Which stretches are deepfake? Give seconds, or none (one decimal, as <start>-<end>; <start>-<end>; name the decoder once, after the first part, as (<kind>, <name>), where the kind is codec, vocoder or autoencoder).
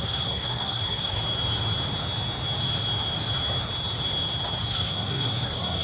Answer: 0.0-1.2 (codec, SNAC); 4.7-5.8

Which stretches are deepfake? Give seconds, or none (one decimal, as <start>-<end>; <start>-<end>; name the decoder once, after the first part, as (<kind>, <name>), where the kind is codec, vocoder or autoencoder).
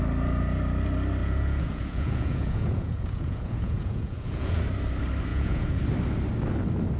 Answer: 1.2-4.6 (vocoder, Vocos); 5.3-5.8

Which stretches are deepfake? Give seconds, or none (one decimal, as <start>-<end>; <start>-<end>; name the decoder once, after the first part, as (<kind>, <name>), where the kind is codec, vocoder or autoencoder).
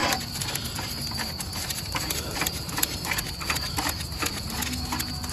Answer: 0.0-3.2 (vocoder, BigVGAN v2)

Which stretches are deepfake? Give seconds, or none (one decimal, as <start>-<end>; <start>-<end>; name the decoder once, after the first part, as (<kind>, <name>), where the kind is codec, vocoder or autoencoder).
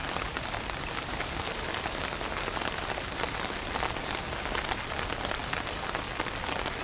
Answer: none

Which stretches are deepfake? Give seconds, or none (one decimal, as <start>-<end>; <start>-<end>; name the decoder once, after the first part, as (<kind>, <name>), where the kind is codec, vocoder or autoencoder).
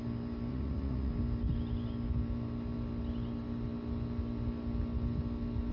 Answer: 0.5-1.1 (vocoder, Vocos)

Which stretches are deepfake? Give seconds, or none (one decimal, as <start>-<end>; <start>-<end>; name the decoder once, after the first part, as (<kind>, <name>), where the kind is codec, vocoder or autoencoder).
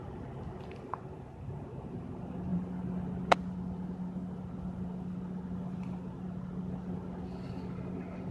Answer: none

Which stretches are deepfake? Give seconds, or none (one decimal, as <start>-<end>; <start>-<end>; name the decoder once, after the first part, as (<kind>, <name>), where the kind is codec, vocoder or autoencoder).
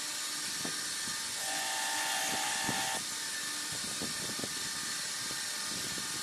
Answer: 1.1-2.2 (vocoder, Vocos)